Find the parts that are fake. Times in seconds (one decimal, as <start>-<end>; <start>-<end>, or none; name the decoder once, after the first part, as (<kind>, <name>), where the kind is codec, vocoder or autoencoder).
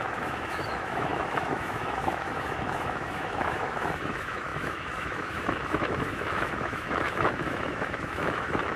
0.0-8.8 (autoencoder, DAC-VAE)